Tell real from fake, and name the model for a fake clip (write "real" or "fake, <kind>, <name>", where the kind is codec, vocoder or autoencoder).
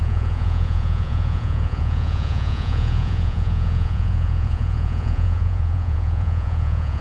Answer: fake, vocoder, Vocos